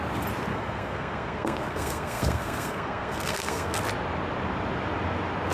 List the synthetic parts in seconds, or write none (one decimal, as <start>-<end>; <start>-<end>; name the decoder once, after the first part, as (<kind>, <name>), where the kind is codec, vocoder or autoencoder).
0.5-3.8 (codec, SNAC)